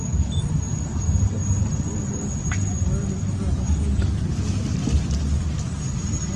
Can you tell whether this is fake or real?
real